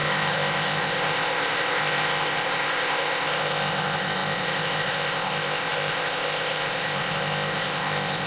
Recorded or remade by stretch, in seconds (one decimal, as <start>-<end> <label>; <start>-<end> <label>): 0.0-8.3 remade